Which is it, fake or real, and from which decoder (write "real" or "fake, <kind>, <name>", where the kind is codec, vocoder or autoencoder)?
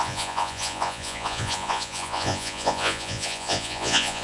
fake, vocoder, Vocos